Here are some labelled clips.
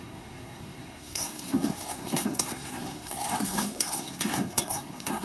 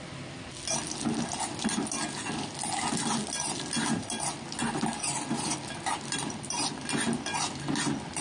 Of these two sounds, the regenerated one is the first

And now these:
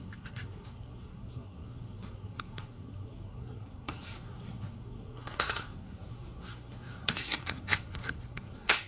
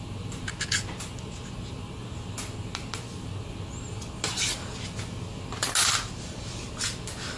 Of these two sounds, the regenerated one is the first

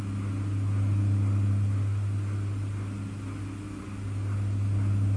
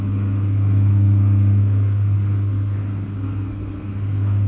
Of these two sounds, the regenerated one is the second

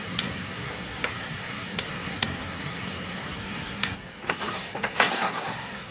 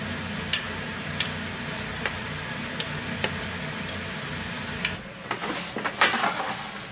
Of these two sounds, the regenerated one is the first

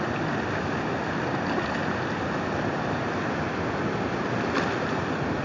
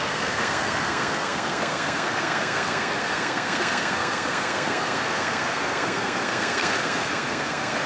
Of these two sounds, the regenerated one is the second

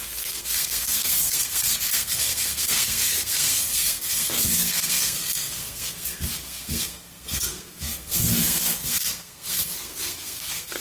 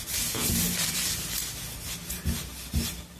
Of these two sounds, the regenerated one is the first